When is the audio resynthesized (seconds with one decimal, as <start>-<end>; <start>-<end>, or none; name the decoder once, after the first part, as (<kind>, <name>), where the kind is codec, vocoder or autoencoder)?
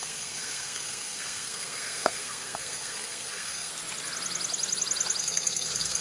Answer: 0.0-3.7 (codec, SNAC); 5.2-6.0